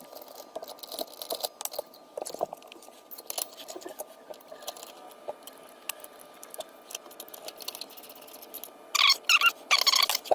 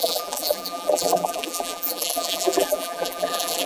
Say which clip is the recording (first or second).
first